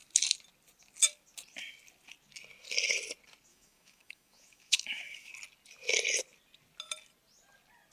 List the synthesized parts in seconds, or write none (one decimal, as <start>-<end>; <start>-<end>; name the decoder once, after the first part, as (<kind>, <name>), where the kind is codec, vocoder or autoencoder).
3.5-5.3 (autoencoder, DAC-VAE)